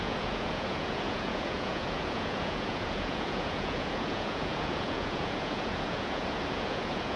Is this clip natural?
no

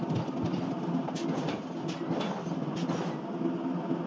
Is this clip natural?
yes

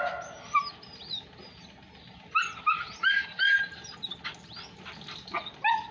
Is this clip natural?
yes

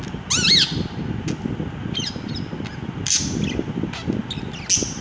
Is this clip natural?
yes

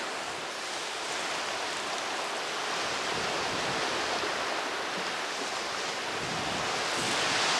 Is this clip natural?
yes